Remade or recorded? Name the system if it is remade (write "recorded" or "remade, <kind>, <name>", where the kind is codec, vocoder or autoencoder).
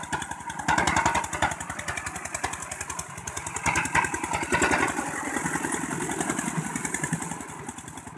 recorded